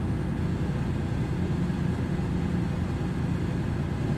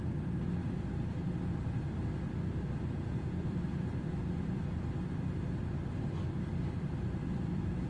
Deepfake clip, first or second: second